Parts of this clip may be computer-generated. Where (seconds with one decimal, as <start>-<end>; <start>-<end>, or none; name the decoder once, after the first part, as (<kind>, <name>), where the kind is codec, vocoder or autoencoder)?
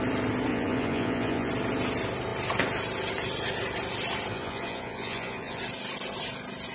0.5-1.5 (vocoder, Vocos); 4.3-5.6